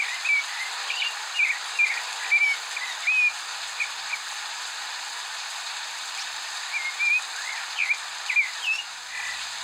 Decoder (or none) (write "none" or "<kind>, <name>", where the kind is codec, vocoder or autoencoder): none